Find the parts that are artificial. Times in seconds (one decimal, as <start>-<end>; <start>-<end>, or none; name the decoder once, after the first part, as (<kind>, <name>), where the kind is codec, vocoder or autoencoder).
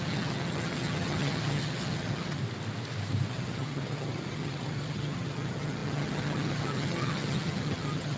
0.0-2.4 (vocoder, HiFi-GAN); 3.3-8.2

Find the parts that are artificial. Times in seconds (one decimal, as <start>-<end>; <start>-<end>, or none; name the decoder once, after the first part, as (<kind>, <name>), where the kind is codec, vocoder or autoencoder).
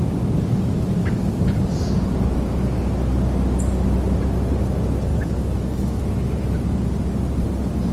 1.0-1.6 (codec, DAC); 5.1-6.0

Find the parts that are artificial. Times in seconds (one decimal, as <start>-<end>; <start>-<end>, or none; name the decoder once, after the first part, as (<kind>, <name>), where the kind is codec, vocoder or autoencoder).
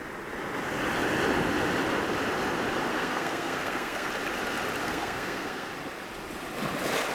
2.9-4.1 (codec, SNAC); 4.8-5.7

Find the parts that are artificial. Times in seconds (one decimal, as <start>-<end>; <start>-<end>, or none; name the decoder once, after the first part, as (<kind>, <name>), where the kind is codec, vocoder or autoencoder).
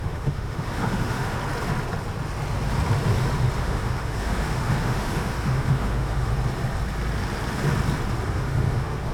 0.0-1.4 (autoencoder, DAC-VAE); 3.6-6.3; 8.3-9.1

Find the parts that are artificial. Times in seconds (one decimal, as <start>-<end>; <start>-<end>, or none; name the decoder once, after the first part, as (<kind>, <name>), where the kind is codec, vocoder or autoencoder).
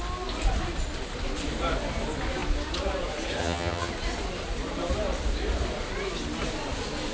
3.4-3.9 (vocoder, HiFi-GAN)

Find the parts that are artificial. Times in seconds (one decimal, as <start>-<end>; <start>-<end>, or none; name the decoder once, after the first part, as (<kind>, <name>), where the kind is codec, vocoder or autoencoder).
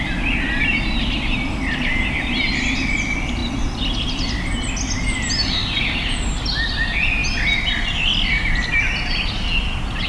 7.2-8.8 (vocoder, BigVGAN v2)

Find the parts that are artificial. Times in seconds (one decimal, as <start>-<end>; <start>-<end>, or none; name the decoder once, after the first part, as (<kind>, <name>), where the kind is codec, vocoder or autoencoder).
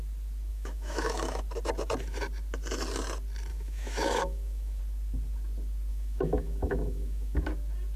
0.5-1.4 (autoencoder, DAC-VAE); 3.5-4.8; 5.9-7.5